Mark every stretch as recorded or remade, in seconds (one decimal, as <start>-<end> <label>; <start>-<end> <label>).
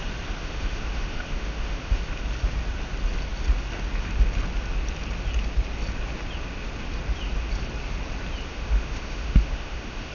0.0-0.4 recorded; 0.4-2.0 remade; 2.0-8.5 recorded; 8.5-10.1 remade